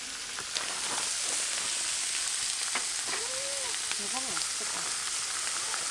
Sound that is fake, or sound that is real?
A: real